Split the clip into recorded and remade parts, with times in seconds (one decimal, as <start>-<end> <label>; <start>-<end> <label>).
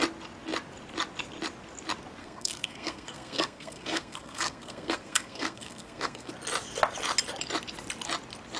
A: 0.0-2.2 recorded; 2.2-6.3 remade; 6.3-8.6 recorded